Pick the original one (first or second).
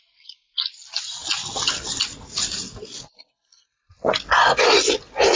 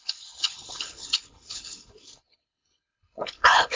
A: first